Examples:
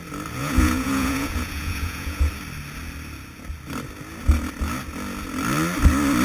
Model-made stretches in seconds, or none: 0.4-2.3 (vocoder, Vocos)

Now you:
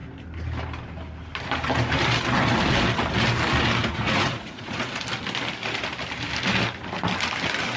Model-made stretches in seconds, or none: 3.8-4.9 (vocoder, Vocos)

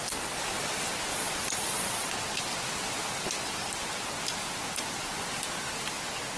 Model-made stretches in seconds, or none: 1.1-2.1 (vocoder, Vocos)

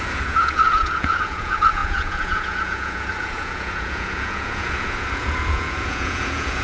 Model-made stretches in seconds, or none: 0.0-6.6 (vocoder, Vocos)

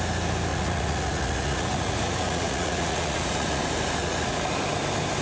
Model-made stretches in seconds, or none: 0.5-3.6 (vocoder, Vocos); 4.0-4.5

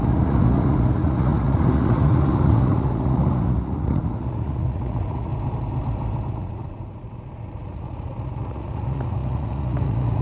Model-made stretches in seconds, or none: 0.0-5.3 (vocoder, Vocos); 6.3-10.2

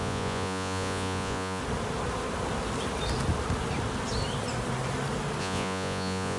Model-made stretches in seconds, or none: 0.0-1.6 (vocoder, Vocos); 5.4-6.4